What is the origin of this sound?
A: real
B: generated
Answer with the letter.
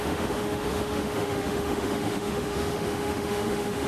B